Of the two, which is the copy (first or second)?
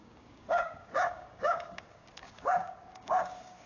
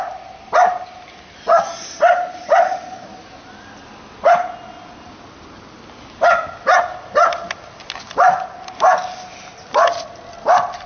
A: first